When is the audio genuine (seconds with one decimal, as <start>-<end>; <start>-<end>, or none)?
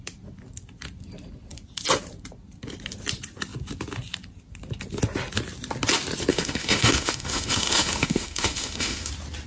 0.0-6.3; 9.1-9.5